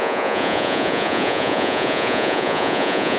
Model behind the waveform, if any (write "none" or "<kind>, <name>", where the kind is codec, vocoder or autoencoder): vocoder, Vocos